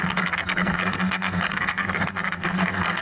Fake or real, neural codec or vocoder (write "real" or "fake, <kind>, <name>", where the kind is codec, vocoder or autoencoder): fake, codec, SNAC